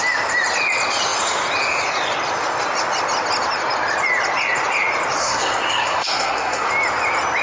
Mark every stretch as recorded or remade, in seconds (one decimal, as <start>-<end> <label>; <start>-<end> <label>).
0.0-5.2 recorded; 5.2-6.7 remade; 6.7-7.4 recorded